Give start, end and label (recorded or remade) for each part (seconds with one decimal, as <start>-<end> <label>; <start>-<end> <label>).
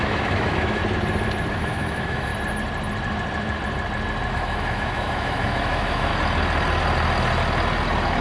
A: 0.0-0.8 remade; 0.8-1.5 recorded; 1.5-2.3 remade; 2.3-4.3 recorded; 4.3-6.1 remade; 6.1-8.2 recorded